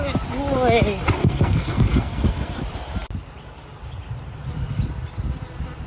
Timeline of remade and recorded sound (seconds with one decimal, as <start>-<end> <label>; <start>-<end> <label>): 0.0-1.2 recorded; 1.2-2.6 remade; 2.6-5.9 recorded